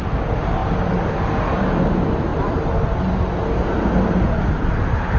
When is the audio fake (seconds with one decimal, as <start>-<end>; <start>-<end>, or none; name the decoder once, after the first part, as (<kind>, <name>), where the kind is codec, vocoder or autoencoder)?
none